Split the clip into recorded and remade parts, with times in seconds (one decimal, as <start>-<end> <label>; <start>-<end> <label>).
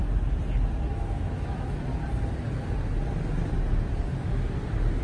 0.0-0.9 recorded; 0.9-1.9 remade; 1.9-5.0 recorded